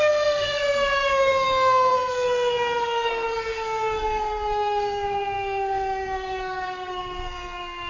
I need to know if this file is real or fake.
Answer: fake